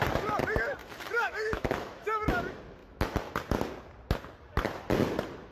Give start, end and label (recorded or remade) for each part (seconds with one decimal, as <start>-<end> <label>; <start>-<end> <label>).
0.0-0.8 recorded; 0.8-2.4 remade; 2.4-2.8 recorded; 2.8-3.3 remade; 3.3-5.5 recorded